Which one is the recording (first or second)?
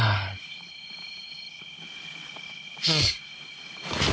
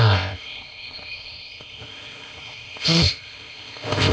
first